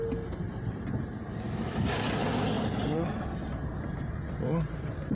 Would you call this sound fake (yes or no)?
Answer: no